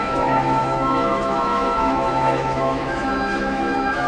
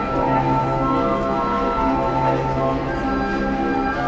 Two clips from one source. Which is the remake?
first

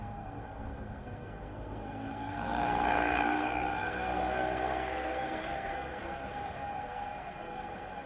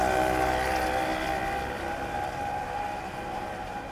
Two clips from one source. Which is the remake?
first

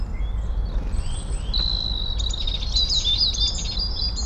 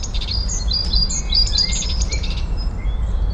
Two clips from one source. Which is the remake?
second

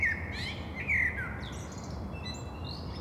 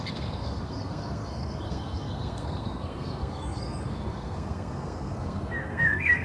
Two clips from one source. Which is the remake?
second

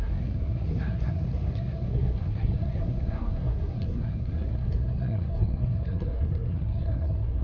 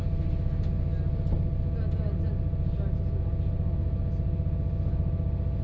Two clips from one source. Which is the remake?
first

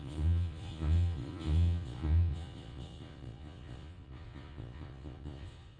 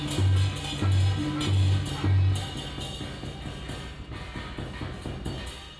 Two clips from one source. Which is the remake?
first